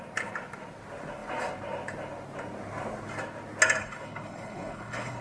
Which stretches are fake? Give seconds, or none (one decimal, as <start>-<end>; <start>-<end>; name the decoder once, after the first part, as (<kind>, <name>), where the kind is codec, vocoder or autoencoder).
3.8-5.2 (codec, HILCodec)